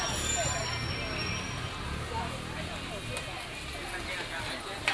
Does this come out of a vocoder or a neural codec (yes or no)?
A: no